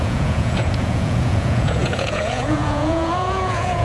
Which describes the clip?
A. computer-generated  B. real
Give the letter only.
A